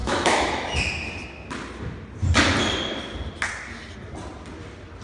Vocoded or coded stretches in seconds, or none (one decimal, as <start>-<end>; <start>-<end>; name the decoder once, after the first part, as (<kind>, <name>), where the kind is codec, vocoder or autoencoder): 0.0-0.8 (autoencoder, DAC-VAE)